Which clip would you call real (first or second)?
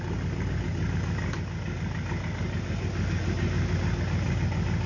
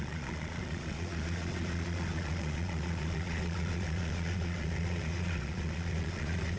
first